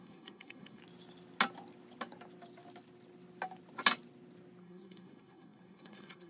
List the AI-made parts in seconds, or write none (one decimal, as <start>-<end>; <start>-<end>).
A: 0.0-0.8; 4.6-6.3